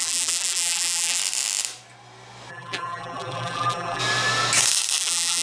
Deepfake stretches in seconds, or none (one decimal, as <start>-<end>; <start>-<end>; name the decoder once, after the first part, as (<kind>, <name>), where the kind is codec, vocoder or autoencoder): 0.0-1.2 (vocoder, BigVGAN v2); 2.5-4.0; 5.0-5.4